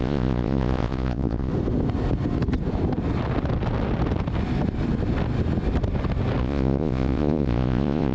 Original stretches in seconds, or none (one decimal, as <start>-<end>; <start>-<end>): 1.5-6.4